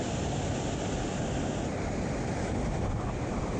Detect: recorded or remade recorded